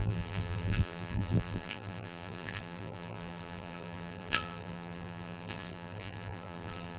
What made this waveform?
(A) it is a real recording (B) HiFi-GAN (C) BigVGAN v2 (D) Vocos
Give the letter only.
C